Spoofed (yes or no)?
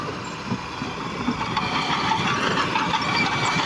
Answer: yes